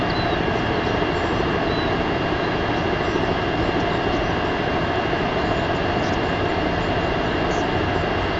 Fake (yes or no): no